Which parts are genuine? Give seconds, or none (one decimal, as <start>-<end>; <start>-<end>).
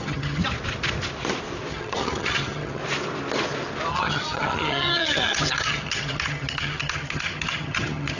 0.4-1.7; 2.8-3.9